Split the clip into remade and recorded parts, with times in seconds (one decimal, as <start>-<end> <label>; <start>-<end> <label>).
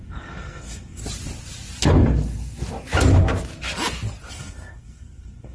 0.0-1.0 remade; 1.0-4.3 recorded; 4.3-5.5 remade